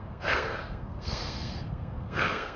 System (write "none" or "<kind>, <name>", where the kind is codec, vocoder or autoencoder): codec, SNAC